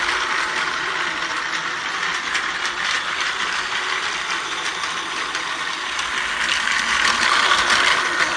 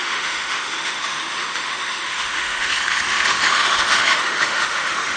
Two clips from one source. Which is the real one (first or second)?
first